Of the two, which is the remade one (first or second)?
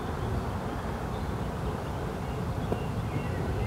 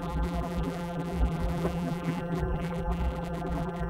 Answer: second